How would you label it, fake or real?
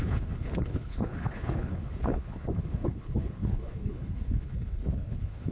fake